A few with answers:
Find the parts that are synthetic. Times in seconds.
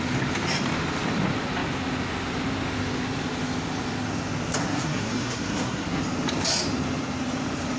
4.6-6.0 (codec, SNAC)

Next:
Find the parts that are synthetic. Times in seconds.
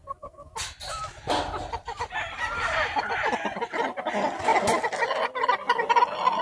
0.0-0.5 (codec, SNAC)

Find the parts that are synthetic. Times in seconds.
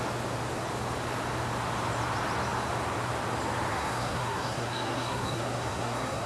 3.7-6.3 (codec, SNAC)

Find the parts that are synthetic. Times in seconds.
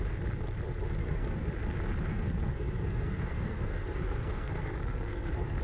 1.0-1.5 (codec, SNAC); 2.1-5.6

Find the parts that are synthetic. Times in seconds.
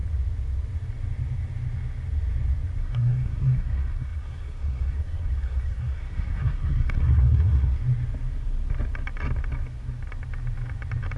2.8-7.8 (codec, SNAC)